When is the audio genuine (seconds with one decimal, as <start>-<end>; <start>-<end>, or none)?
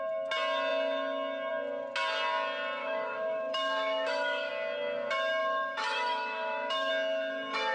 0.0-2.8; 4.5-5.4; 6.9-7.7